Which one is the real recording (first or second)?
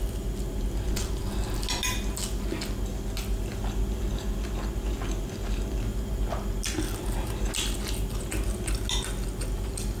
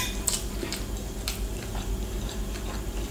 first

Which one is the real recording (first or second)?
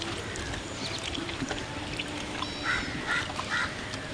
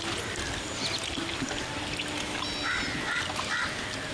second